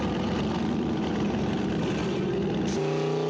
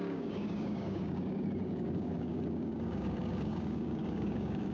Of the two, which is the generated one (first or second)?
second